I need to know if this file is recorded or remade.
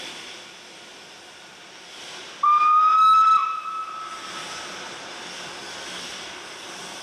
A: recorded